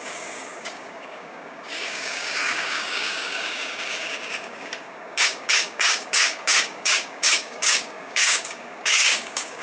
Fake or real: fake